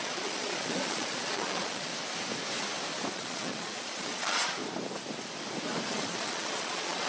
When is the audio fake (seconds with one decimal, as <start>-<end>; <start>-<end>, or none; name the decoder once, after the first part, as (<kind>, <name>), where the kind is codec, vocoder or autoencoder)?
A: 0.0-1.9 (vocoder, Vocos); 3.1-4.6; 5.9-7.1